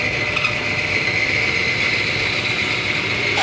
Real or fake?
real